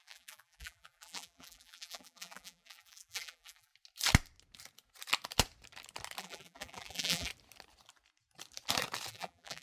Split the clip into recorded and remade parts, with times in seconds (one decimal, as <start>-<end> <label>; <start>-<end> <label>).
0.0-3.7 remade; 3.7-6.2 recorded; 6.2-7.3 remade; 7.3-9.1 recorded; 9.1-9.6 remade

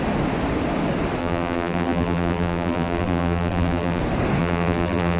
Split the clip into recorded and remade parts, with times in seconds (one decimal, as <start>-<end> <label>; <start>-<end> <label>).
0.0-1.2 recorded; 1.2-4.0 remade; 4.0-4.4 recorded; 4.4-5.2 remade

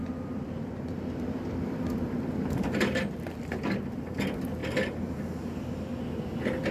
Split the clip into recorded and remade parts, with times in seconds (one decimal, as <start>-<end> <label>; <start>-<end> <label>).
0.0-4.0 remade; 4.0-4.6 recorded; 4.6-6.0 remade; 6.0-6.7 recorded

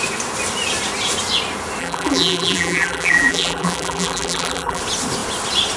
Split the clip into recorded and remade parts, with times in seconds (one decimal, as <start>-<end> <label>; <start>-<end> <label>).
0.0-1.8 recorded; 1.8-4.8 remade; 4.8-5.8 recorded

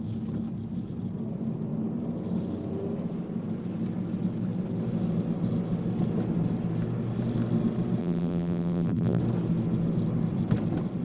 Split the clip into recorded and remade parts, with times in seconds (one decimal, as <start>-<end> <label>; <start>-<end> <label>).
0.0-8.0 recorded; 8.0-9.2 remade; 9.2-11.0 recorded

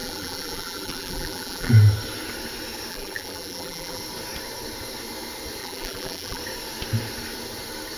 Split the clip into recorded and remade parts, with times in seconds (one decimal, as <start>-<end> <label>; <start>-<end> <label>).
0.0-1.7 remade; 1.7-2.9 recorded; 2.9-4.0 remade; 4.0-5.6 recorded; 5.6-6.4 remade; 6.4-8.0 recorded

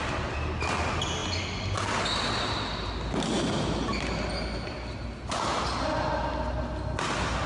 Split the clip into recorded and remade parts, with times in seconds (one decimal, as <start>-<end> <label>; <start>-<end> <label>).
0.0-7.5 recorded

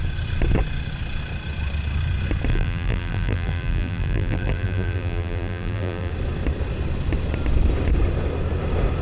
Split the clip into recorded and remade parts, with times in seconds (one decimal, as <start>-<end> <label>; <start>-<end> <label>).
0.0-2.5 recorded; 2.5-6.1 remade; 6.1-9.0 recorded